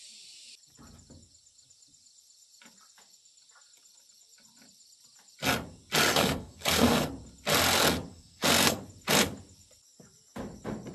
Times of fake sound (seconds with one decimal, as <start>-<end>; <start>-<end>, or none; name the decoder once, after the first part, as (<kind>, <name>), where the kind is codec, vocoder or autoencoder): 6.1-7.1 (codec, SNAC); 8.1-8.8